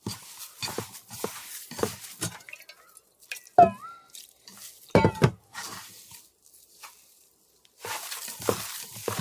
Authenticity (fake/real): real